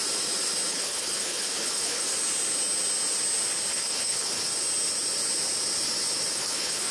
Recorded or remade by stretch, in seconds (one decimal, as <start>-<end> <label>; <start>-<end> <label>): 0.0-0.7 recorded; 0.7-2.0 remade; 2.0-3.7 recorded; 3.7-4.3 remade; 4.3-6.3 recorded; 6.3-6.9 remade